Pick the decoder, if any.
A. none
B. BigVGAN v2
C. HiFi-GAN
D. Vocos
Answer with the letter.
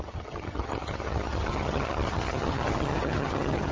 C